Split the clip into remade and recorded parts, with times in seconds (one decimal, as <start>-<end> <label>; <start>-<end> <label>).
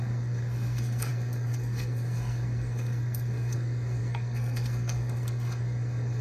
0.0-6.2 remade